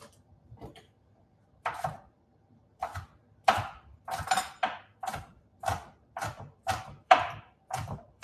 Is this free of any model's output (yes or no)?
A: no